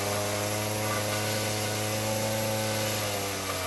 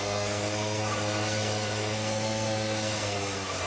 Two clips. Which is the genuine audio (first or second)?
first